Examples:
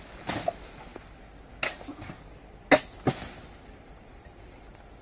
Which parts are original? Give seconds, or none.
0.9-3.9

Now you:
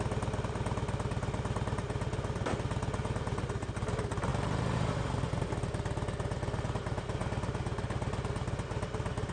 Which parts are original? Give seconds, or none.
0.0-9.3

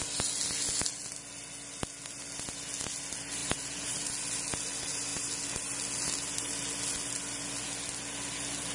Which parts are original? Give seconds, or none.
0.0-3.4; 4.1-8.7

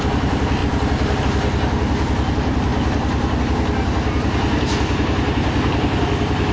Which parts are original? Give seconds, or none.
0.0-6.5